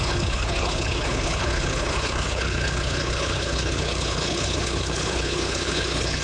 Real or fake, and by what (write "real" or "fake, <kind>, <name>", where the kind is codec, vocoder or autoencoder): fake, codec, HILCodec